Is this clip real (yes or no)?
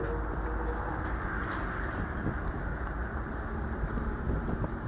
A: yes